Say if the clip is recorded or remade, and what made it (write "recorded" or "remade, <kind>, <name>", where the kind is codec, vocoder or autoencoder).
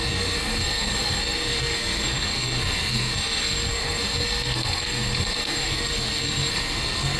remade, codec, SNAC